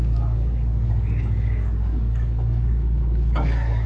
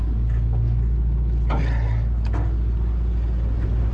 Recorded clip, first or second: second